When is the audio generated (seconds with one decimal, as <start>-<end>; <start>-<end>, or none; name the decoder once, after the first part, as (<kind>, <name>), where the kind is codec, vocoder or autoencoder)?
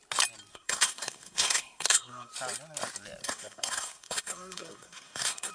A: 0.5-2.3 (codec, SNAC); 3.2-5.5